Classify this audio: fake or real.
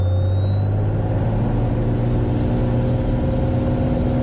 real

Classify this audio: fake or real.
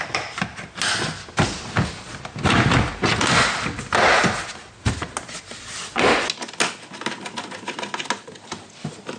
real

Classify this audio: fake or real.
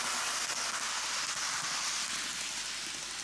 real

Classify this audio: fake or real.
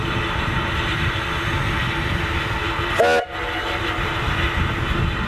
real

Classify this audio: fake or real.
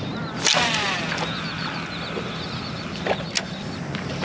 real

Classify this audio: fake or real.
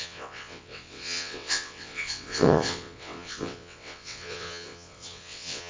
fake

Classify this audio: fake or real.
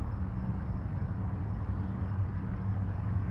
fake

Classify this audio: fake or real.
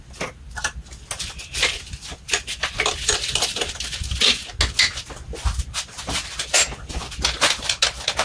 real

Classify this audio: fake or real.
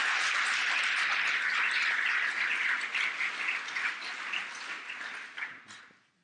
real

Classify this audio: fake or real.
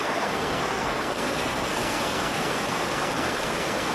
fake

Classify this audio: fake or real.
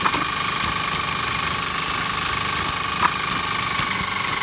real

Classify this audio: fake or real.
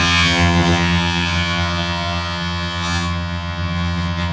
fake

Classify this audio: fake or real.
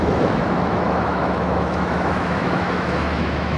fake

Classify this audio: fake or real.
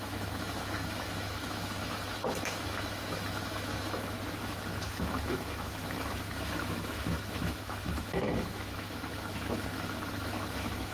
fake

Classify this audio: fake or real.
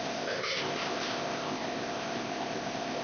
fake